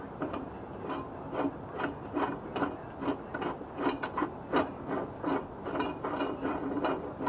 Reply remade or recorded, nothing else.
recorded